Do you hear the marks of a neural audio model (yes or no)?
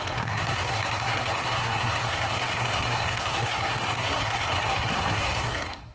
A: yes